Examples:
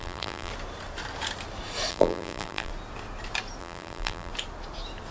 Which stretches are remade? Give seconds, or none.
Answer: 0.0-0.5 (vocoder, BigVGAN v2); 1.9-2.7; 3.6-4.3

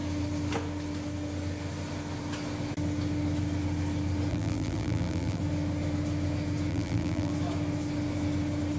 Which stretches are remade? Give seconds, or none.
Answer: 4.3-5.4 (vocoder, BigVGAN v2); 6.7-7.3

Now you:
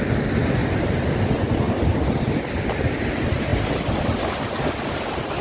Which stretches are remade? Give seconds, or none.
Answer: 0.6-1.2 (vocoder, BigVGAN v2)

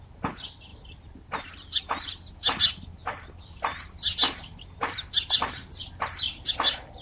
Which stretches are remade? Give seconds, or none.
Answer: 3.0-6.3 (vocoder, BigVGAN v2)

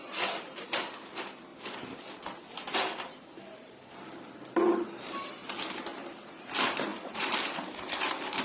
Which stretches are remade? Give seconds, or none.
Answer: 1.5-5.8 (vocoder, BigVGAN v2); 6.9-8.4

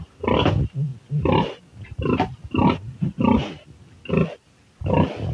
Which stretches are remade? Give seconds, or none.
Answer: none